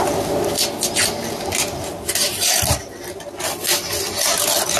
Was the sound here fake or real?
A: real